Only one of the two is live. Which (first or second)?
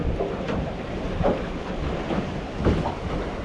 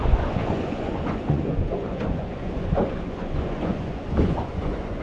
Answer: first